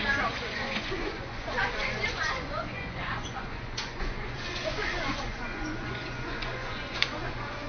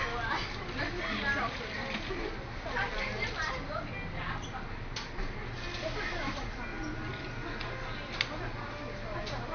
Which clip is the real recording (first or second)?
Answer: second